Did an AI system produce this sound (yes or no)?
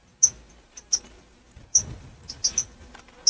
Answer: no